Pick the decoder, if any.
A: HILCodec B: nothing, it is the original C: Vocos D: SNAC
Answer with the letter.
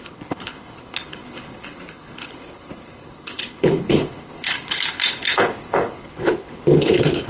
A